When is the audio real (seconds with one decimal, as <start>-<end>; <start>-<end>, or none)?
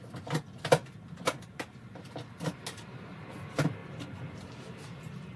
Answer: 0.0-5.4